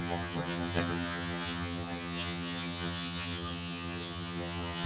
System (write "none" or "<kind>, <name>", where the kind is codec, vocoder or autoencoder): vocoder, HiFi-GAN